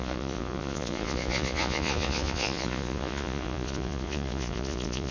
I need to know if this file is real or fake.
fake